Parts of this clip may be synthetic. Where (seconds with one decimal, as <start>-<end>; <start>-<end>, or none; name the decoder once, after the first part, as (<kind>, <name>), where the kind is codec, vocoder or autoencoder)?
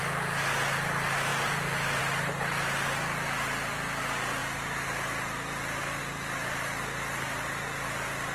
1.3-2.0 (vocoder, BigVGAN v2)